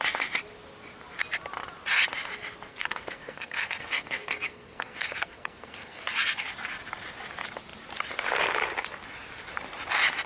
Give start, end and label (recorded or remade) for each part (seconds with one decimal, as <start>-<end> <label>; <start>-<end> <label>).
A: 0.0-2.7 recorded; 2.7-6.0 remade; 6.0-10.3 recorded